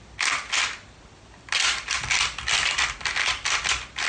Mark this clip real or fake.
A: real